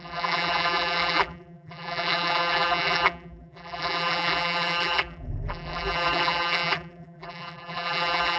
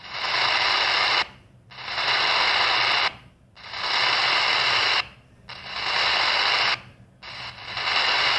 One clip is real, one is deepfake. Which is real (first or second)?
second